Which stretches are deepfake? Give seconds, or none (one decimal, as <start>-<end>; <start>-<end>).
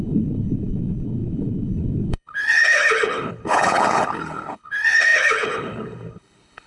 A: 0.0-6.7